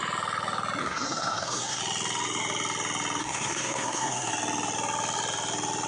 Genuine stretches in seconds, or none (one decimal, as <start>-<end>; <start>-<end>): 0.0-0.8; 1.8-3.2; 4.3-5.9